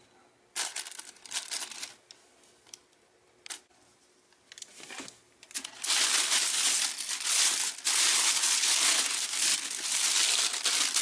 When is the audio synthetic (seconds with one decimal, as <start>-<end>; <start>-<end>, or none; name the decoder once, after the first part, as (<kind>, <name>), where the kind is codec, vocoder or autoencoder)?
none